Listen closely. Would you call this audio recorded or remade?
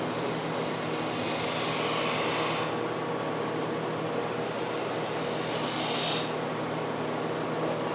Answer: recorded